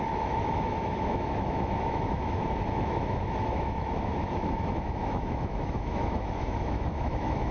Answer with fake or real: fake